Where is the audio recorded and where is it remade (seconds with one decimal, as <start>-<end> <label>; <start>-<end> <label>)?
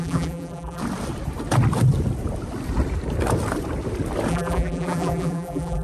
0.0-0.8 remade; 0.8-4.3 recorded; 4.3-5.8 remade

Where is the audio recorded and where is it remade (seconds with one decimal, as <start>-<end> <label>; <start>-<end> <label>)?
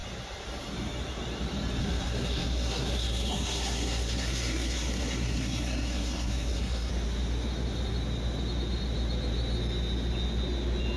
0.0-1.8 recorded; 1.8-6.9 remade; 6.9-11.0 recorded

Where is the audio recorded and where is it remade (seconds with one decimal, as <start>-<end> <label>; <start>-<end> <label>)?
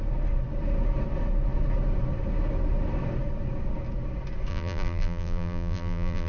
0.0-4.5 recorded; 4.5-6.3 remade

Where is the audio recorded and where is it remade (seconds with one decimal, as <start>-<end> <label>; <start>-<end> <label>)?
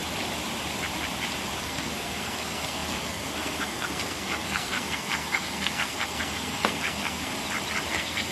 0.0-1.6 recorded; 1.6-7.3 remade; 7.3-7.9 recorded; 7.9-8.3 remade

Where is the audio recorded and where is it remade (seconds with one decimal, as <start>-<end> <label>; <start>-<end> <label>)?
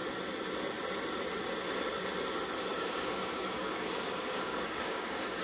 0.0-2.7 recorded; 2.7-5.4 remade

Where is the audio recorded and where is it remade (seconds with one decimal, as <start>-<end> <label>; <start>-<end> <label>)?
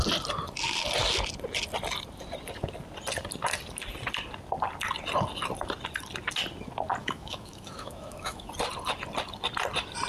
0.0-7.0 recorded; 7.0-8.5 remade; 8.5-10.1 recorded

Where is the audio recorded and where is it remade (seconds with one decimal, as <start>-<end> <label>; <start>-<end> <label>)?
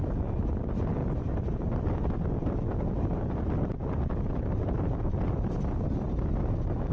0.0-6.9 recorded